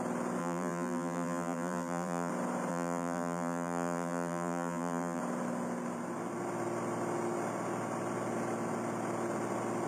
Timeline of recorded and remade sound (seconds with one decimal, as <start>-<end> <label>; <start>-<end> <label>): 0.0-0.4 recorded; 0.4-2.3 remade; 2.3-2.7 recorded; 2.7-5.2 remade; 5.2-9.9 recorded